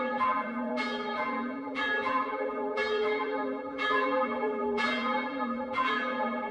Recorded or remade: remade